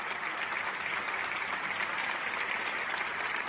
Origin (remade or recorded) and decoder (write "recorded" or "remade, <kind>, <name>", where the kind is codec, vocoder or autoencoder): recorded